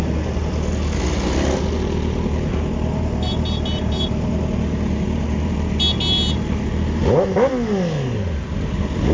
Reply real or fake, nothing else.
real